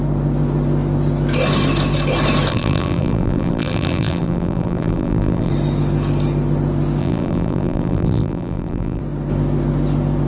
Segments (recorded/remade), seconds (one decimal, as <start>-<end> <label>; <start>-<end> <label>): 0.0-2.5 recorded; 2.5-5.5 remade; 5.5-7.0 recorded; 7.0-9.0 remade; 9.0-10.3 recorded